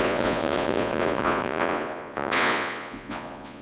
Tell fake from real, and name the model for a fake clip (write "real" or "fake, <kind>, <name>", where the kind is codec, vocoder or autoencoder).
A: fake, vocoder, Vocos